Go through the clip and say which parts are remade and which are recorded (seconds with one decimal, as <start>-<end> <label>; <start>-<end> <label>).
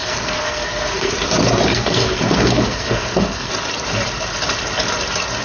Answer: 0.0-1.1 remade; 1.1-1.7 recorded; 1.7-3.5 remade; 3.5-5.4 recorded